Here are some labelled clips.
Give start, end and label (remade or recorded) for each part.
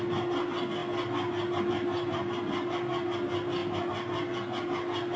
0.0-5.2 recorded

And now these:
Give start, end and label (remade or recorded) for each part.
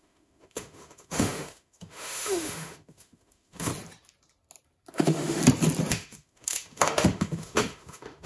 0.0-3.7 remade; 3.7-4.9 recorded; 4.9-5.4 remade; 5.4-5.9 recorded; 5.9-8.3 remade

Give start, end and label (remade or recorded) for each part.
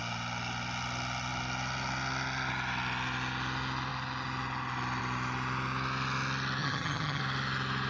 0.0-6.6 recorded; 6.6-7.2 remade; 7.2-7.9 recorded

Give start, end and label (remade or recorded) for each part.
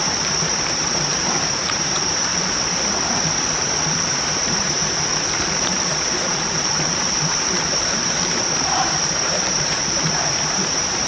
0.0-2.3 remade; 2.3-4.1 recorded; 4.1-4.8 remade; 4.8-7.5 recorded; 7.5-11.1 remade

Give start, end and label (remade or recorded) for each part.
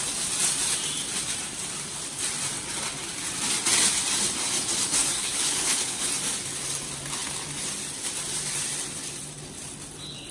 0.0-5.2 recorded; 5.2-6.1 remade; 6.1-10.3 recorded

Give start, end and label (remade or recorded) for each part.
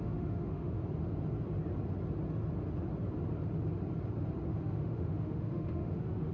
0.0-0.8 remade; 0.8-4.5 recorded; 4.5-6.3 remade